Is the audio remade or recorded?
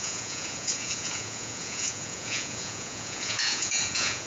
remade